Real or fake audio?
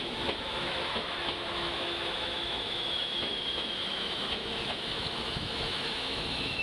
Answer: fake